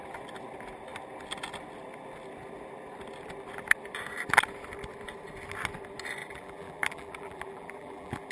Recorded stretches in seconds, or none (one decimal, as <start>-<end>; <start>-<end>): 0.0-6.2